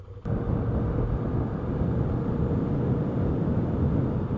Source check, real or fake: real